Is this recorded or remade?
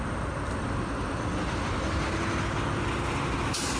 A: recorded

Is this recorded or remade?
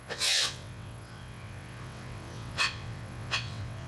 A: remade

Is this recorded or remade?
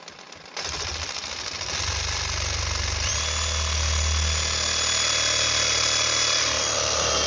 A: recorded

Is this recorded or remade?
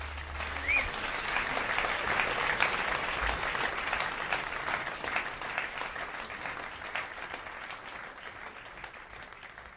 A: recorded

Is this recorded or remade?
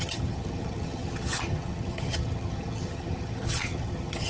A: remade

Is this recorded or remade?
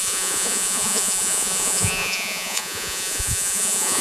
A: remade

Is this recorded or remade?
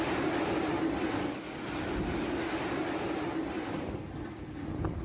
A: recorded